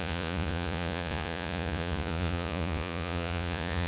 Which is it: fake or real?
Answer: fake